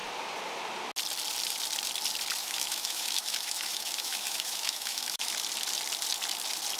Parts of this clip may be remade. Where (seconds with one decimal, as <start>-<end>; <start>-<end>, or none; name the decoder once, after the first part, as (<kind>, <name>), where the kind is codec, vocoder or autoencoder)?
2.4-5.3 (autoencoder, DAC-VAE)